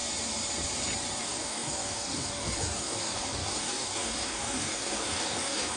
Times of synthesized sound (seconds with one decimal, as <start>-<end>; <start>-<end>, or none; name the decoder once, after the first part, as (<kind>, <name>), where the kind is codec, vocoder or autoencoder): 1.2-5.8 (codec, DAC)